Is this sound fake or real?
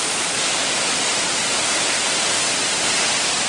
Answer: real